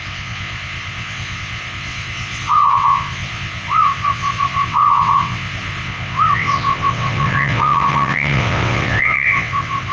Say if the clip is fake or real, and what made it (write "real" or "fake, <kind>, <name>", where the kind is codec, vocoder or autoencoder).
fake, vocoder, WaveNeXt